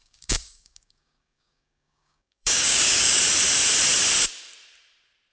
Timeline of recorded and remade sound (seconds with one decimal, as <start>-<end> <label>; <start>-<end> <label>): 0.0-3.2 remade; 3.2-5.3 recorded

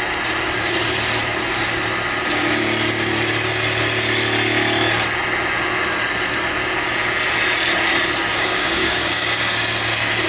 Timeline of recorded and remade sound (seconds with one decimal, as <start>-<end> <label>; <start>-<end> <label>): 0.0-8.3 recorded; 8.3-9.4 remade; 9.4-10.3 recorded